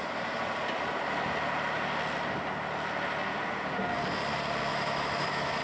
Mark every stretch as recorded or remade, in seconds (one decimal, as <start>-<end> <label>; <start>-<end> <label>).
0.0-4.7 recorded; 4.7-5.6 remade